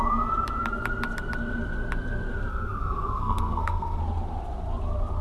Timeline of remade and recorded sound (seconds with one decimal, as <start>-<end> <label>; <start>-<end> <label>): 0.0-2.5 recorded; 2.5-4.0 remade; 4.0-5.2 recorded